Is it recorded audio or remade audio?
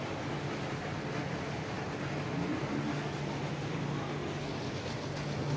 recorded